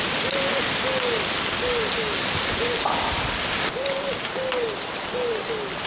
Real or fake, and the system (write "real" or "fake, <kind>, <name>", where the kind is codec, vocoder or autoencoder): fake, vocoder, BigVGAN v2